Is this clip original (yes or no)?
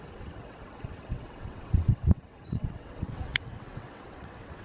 no